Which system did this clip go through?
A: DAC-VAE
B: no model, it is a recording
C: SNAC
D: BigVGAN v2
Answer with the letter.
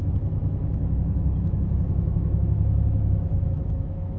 A